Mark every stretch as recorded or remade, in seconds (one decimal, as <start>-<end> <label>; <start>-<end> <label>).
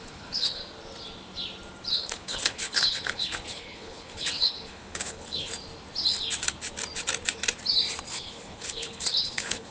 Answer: 0.0-0.6 remade; 0.6-1.9 recorded; 1.9-5.5 remade; 5.5-8.1 recorded; 8.1-9.7 remade